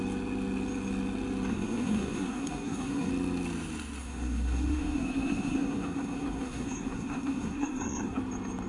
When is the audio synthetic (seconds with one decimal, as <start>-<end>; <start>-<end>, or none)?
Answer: 1.5-3.1; 4.0-8.2